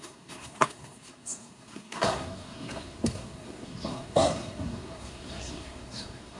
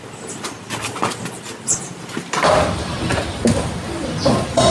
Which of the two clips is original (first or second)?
second